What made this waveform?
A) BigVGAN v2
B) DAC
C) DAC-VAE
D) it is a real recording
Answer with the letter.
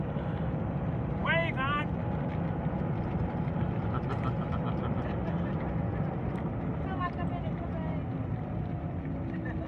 D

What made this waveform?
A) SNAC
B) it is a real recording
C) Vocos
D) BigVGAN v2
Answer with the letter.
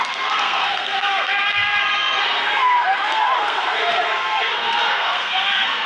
A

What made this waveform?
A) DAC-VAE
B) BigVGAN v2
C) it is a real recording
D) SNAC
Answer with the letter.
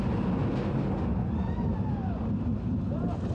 C